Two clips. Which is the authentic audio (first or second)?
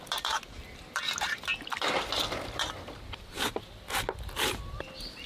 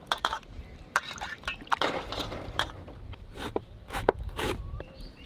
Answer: first